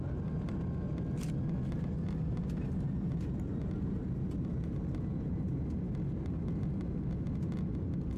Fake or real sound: real